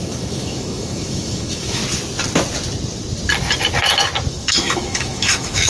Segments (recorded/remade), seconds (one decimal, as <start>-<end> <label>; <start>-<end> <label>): 0.0-1.8 remade; 1.8-4.3 recorded; 4.3-5.7 remade

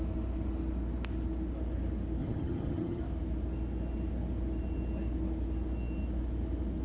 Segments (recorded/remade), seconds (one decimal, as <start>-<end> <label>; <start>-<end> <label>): 0.0-2.2 recorded; 2.2-3.0 remade; 3.0-6.8 recorded

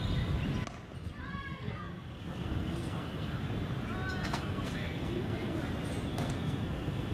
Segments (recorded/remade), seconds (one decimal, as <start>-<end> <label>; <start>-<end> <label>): 0.0-1.4 recorded; 1.4-3.4 remade; 3.4-4.2 recorded; 4.2-5.6 remade; 5.6-6.1 recorded; 6.1-7.1 remade

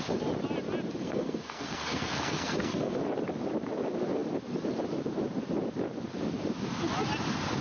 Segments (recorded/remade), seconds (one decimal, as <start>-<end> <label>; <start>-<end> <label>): 0.0-1.0 recorded; 1.0-3.0 remade; 3.0-7.6 recorded

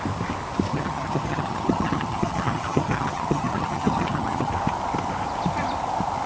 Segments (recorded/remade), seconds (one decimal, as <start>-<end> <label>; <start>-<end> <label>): 0.0-0.7 recorded; 0.7-4.5 remade; 4.5-6.3 recorded

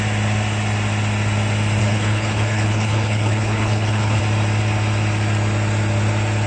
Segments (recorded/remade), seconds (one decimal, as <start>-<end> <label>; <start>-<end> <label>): 0.0-1.8 recorded; 1.8-4.2 remade; 4.2-6.5 recorded

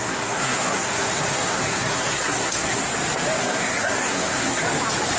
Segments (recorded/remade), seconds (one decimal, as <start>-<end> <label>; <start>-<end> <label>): 0.0-2.8 remade; 2.8-3.4 recorded; 3.4-4.6 remade; 4.6-5.2 recorded

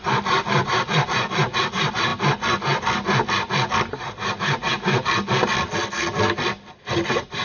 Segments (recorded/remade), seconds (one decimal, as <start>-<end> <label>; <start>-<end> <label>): 0.0-2.1 remade; 2.1-3.9 recorded; 3.9-4.7 remade; 4.7-6.9 recorded; 6.9-7.4 remade